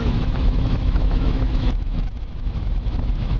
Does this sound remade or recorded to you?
remade